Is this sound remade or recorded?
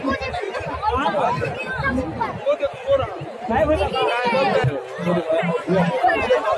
recorded